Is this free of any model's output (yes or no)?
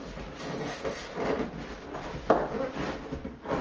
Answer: yes